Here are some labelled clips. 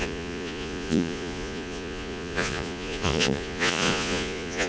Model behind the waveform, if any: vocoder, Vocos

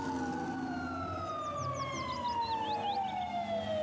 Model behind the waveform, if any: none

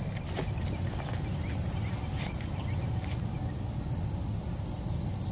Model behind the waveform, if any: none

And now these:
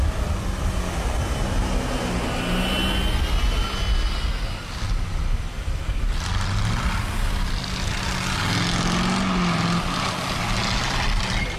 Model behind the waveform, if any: none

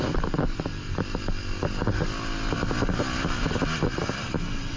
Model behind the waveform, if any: none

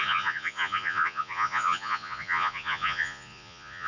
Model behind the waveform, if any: vocoder, Vocos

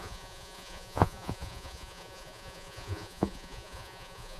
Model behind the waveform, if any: vocoder, Vocos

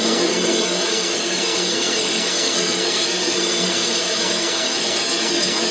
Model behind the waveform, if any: codec, SNAC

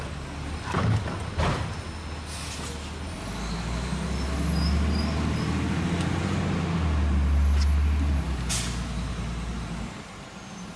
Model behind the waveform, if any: none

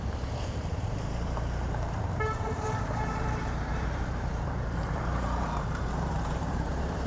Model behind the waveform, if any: vocoder, BigVGAN v2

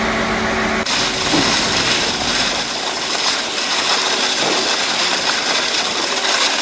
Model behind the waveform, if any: none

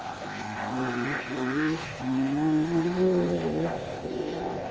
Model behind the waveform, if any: codec, ZipCodec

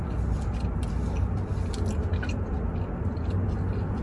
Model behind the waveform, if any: none